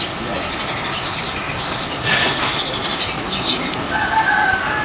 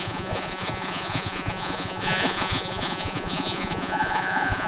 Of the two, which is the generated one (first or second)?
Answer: second